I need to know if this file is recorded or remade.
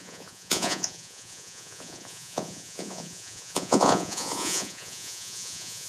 remade